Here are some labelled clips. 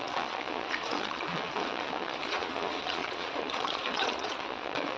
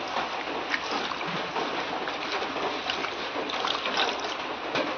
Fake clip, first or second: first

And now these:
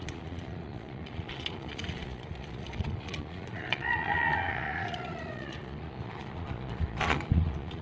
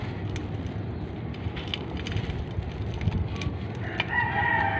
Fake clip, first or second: first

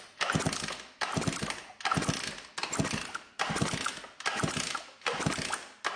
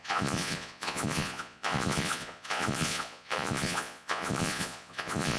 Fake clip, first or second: second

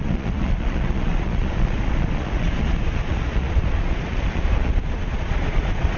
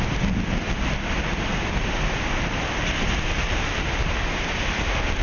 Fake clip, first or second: first